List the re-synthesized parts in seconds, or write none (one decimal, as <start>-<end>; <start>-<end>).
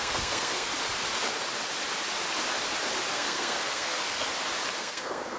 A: 0.0-0.7; 3.1-4.3; 4.8-5.4